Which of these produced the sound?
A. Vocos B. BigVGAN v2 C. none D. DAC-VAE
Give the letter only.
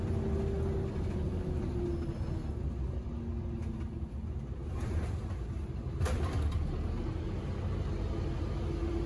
C